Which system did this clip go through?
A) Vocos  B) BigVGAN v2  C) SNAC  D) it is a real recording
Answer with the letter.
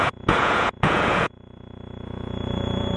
A